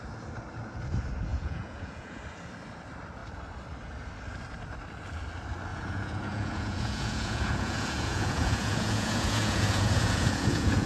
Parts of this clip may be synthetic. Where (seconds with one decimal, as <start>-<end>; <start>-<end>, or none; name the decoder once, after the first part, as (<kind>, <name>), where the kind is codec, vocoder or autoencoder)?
1.3-2.2 (vocoder, Vocos); 5.7-10.9